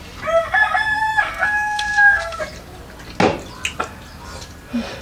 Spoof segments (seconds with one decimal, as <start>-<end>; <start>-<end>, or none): 0.4-2.4